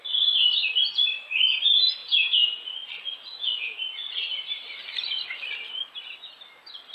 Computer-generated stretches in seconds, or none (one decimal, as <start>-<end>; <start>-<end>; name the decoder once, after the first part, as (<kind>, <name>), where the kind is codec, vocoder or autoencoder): 2.0-2.7 (vocoder, Vocos); 3.3-3.8